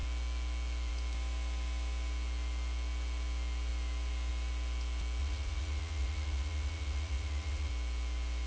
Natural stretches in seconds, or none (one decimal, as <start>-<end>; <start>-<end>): 0.0-5.2; 7.7-8.5